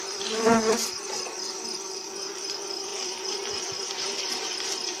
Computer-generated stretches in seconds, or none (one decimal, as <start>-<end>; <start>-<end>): none